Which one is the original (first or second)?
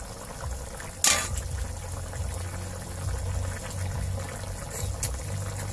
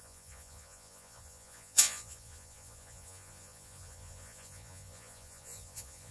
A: first